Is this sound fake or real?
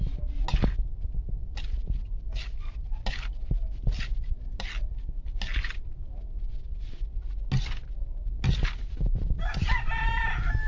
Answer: real